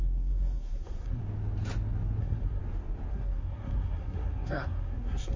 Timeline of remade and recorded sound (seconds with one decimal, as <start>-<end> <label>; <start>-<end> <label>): 0.0-1.2 remade; 1.2-2.2 recorded; 2.2-2.6 remade; 2.6-3.1 recorded; 3.1-5.4 remade